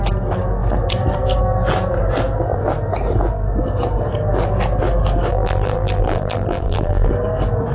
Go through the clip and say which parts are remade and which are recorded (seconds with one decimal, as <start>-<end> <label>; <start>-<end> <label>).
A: 0.0-5.3 recorded; 5.3-7.1 remade; 7.1-7.7 recorded